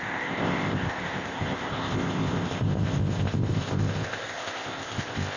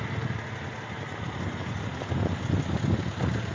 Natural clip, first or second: second